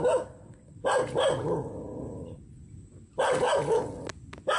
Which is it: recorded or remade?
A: recorded